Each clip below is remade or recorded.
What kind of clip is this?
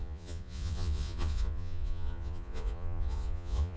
remade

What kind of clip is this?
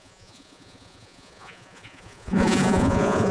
remade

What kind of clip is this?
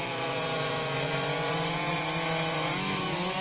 remade